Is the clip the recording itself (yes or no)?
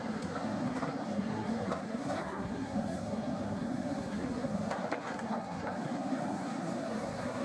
no